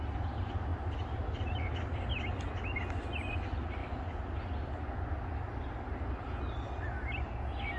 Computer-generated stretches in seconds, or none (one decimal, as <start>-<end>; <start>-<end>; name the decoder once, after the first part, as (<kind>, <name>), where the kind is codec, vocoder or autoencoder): none